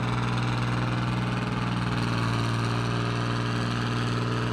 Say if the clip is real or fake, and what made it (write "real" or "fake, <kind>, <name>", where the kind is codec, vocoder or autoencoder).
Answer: real